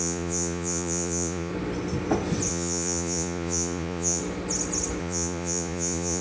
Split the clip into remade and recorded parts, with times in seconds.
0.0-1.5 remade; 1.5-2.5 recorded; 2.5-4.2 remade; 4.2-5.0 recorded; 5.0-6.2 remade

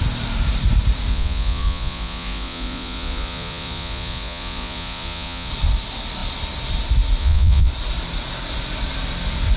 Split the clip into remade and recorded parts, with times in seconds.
0.0-1.1 recorded; 1.1-5.5 remade; 5.5-7.2 recorded; 7.2-7.7 remade; 7.7-9.6 recorded

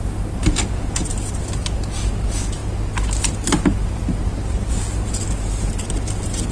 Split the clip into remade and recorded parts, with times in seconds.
0.0-6.5 recorded

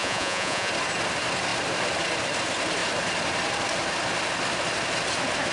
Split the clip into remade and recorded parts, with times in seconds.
0.0-0.7 remade; 0.7-5.5 recorded